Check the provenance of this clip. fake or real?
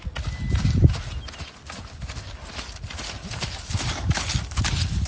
real